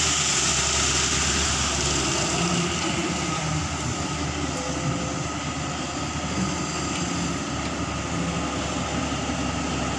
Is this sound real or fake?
real